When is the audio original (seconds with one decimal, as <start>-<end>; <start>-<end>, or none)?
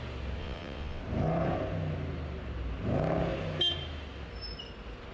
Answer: 0.0-0.4; 1.0-5.1